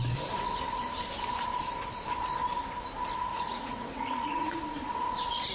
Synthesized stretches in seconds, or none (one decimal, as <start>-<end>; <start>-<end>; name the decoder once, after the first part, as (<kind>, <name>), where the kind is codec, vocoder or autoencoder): 3.3-4.6 (vocoder, Vocos)